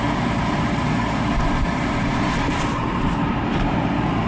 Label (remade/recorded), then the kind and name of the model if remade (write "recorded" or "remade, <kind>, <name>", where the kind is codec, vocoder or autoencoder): remade, vocoder, BigVGAN v2